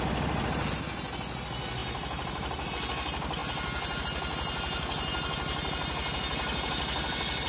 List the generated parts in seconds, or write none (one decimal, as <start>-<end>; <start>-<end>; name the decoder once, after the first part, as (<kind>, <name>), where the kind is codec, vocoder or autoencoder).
1.8-2.7 (vocoder, BigVGAN v2)